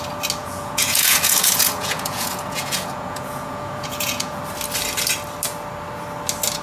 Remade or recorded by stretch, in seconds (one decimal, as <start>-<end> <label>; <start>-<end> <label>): 0.0-0.4 recorded; 0.4-4.4 remade; 4.4-6.6 recorded